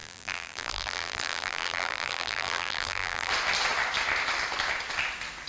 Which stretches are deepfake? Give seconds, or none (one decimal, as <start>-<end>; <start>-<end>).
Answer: 0.0-3.3